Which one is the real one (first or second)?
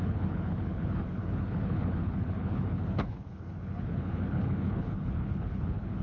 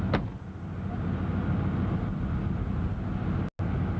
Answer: second